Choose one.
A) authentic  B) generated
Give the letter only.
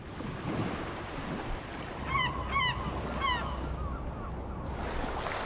A